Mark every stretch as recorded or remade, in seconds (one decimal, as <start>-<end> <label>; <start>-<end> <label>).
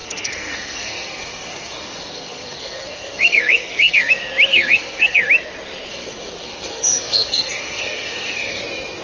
0.0-4.1 remade; 4.1-4.5 recorded; 4.5-5.3 remade; 5.3-5.9 recorded; 5.9-8.6 remade; 8.6-9.0 recorded